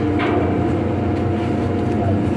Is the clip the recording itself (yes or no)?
yes